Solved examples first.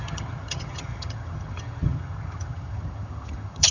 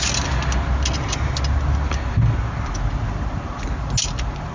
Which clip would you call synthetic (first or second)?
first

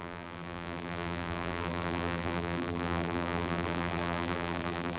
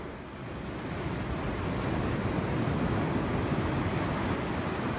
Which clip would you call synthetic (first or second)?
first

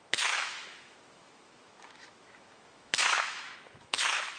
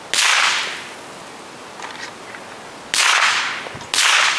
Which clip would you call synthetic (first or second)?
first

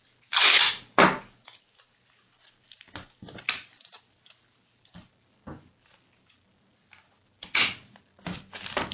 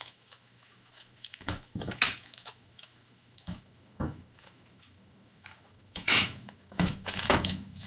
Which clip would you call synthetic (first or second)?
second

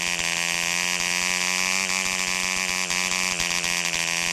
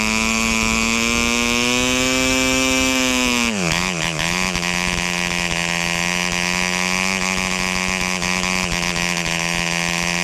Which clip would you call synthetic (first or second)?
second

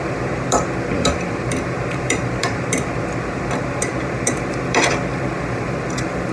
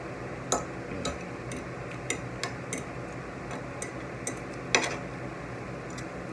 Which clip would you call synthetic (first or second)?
first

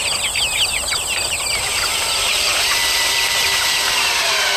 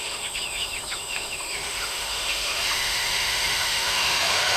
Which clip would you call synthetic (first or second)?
second